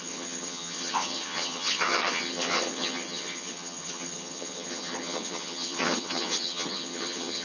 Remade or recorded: remade